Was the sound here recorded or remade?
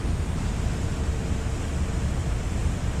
recorded